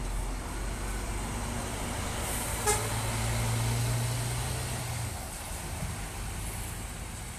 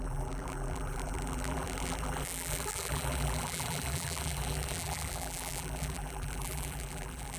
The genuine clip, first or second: first